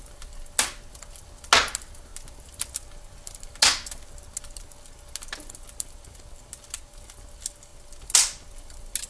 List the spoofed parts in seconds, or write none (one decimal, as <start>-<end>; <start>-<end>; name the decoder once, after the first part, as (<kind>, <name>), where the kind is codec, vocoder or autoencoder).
none